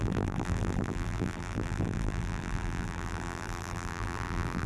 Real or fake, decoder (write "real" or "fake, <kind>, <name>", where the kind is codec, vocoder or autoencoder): fake, vocoder, BigVGAN v2